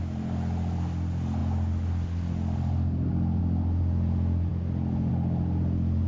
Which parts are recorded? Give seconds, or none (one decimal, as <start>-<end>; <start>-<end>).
0.0-6.1

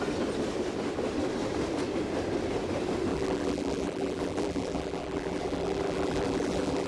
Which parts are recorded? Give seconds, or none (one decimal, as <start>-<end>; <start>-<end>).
0.0-3.1

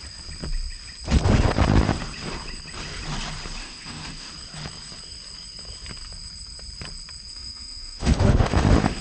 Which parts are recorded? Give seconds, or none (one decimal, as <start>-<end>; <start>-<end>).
0.0-3.6; 4.3-7.3

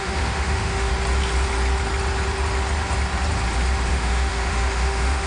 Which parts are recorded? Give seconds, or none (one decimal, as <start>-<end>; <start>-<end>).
0.9-3.9

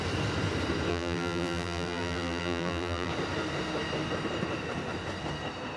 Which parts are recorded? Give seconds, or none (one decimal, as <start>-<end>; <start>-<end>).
0.0-0.9; 3.1-5.8

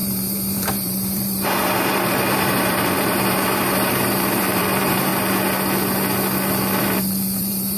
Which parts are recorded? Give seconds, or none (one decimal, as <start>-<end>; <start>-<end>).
5.1-6.8

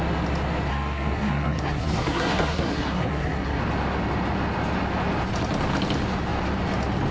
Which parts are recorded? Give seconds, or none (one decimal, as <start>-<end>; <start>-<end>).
0.0-0.7; 3.6-7.1

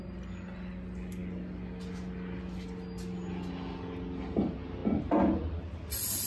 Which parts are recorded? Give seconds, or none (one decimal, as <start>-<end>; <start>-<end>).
0.0-6.3